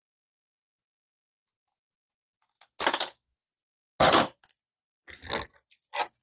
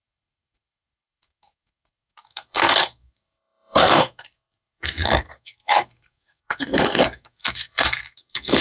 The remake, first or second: second